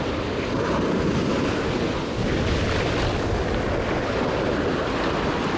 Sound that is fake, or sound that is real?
real